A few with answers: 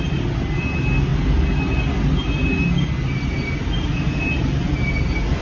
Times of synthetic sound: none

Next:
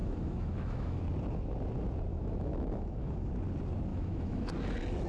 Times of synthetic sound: 0.0-1.0; 2.1-3.3; 3.9-4.5

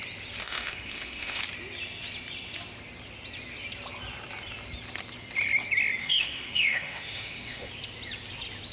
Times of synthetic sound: 0.4-1.4; 6.0-7.7

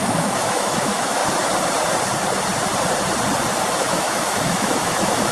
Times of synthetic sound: 0.0-1.2; 3.7-5.3

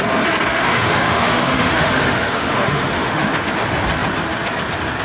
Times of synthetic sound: 0.5-3.5

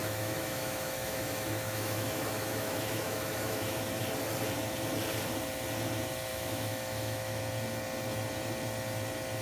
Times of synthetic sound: 0.0-4.0; 6.3-7.4